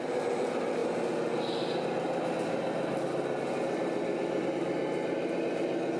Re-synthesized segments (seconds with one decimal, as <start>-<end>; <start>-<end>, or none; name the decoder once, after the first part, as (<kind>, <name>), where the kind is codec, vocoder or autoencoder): none